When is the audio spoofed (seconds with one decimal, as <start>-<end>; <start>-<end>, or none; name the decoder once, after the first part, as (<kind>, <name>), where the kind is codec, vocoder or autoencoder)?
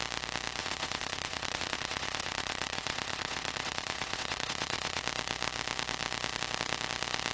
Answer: 0.6-5.0 (vocoder, WaveNeXt)